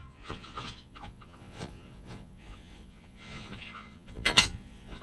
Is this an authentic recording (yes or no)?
no